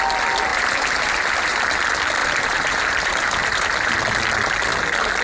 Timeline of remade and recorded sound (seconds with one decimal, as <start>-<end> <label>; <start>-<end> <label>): 0.0-0.5 recorded; 0.5-1.6 remade; 1.6-2.2 recorded; 2.2-3.9 remade; 3.9-5.2 recorded